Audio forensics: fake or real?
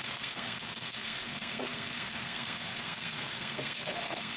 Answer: fake